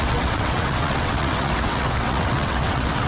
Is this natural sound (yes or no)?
no